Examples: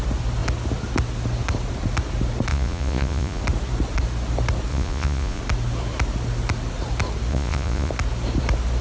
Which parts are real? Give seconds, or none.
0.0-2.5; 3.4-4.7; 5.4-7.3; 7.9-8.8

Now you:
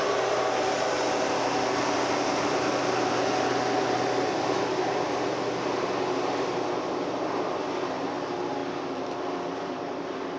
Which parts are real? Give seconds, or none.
0.0-10.4

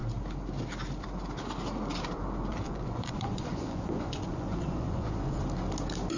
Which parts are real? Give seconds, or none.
0.0-2.5; 5.4-6.2

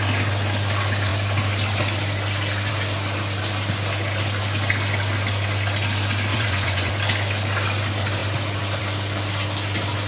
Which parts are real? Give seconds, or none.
0.0-6.3; 6.9-10.1

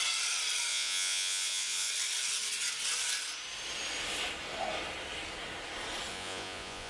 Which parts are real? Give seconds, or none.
0.0-0.7; 1.9-6.1

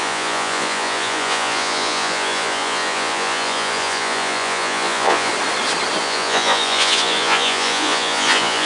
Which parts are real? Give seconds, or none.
5.3-6.0

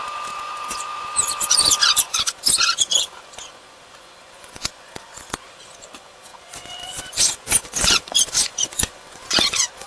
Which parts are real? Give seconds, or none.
none